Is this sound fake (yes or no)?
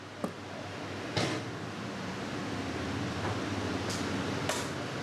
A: no